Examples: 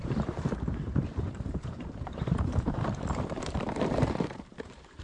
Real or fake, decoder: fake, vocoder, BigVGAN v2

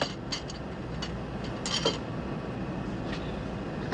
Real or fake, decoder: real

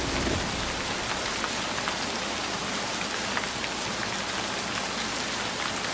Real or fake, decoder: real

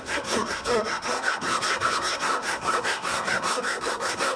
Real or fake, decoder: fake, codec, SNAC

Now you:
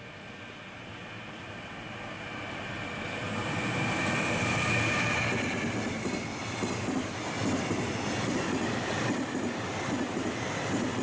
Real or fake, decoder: real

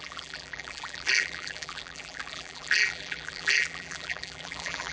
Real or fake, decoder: fake, vocoder, BigVGAN v2